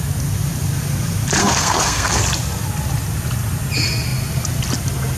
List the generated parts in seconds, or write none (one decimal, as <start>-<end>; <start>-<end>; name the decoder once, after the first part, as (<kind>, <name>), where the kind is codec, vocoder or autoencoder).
1.4-2.2 (codec, SNAC)